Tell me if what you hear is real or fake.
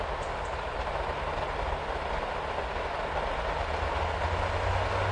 real